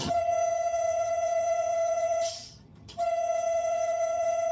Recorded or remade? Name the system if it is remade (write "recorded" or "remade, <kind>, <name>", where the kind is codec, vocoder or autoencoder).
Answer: remade, vocoder, HiFi-GAN